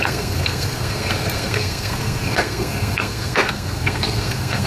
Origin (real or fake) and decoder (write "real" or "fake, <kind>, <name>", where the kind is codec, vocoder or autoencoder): fake, codec, SNAC